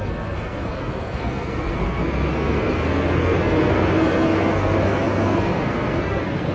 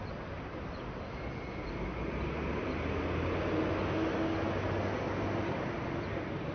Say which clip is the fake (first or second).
first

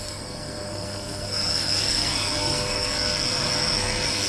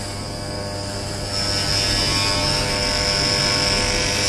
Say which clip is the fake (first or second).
first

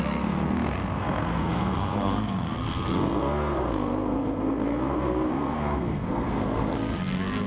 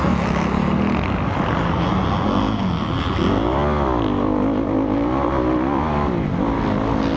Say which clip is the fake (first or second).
first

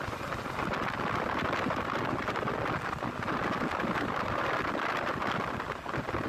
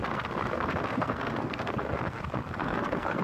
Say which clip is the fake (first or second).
second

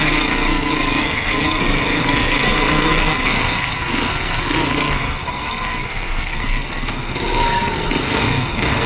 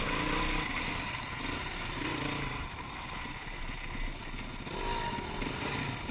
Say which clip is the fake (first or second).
first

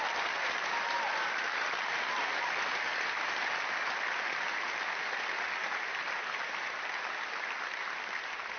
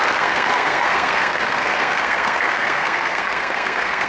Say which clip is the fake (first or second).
second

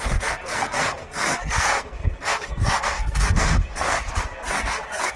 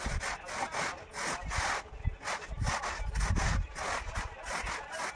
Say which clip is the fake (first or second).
first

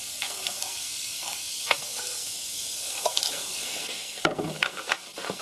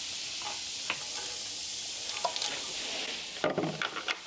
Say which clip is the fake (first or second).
first